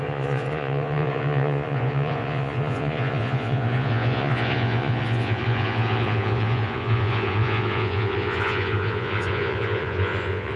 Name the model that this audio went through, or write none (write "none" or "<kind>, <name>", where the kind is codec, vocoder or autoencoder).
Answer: vocoder, Vocos